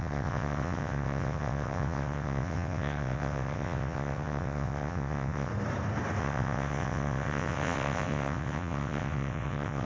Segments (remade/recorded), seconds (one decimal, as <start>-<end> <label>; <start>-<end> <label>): 0.0-5.5 remade; 5.5-6.2 recorded; 6.2-9.8 remade